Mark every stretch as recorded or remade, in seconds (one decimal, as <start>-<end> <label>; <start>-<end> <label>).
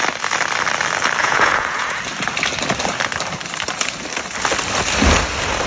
0.0-1.2 recorded; 1.2-2.0 remade; 2.0-5.7 recorded